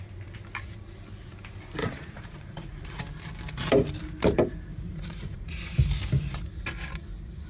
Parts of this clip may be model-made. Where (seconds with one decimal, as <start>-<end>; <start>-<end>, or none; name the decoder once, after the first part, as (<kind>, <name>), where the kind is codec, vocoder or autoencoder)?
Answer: 1.8-3.0 (vocoder, Vocos); 4.7-5.8

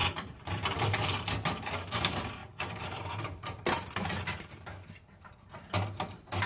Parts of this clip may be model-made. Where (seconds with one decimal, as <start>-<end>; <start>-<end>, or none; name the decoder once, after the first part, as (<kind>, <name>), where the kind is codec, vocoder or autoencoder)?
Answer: 0.0-2.0 (vocoder, BigVGAN v2); 2.4-5.5

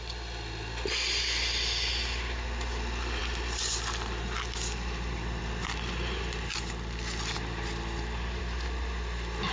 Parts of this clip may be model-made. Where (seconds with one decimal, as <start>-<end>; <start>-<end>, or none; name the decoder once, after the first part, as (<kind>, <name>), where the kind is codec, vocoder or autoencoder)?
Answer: none

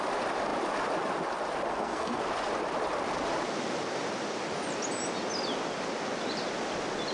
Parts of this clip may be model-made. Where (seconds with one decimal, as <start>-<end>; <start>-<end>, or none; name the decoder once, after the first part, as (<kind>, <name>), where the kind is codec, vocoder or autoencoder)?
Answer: 1.7-2.2 (codec, SNAC)